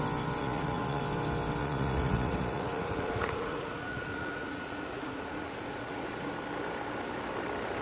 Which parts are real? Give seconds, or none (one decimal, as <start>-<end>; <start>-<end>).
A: 0.0-0.4; 1.0-1.6; 6.3-7.8

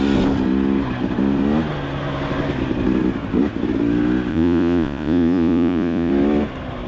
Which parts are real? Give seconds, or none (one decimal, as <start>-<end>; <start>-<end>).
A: 0.0-4.3; 6.1-6.9